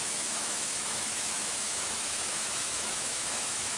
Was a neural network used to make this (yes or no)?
yes